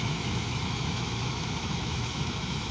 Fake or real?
fake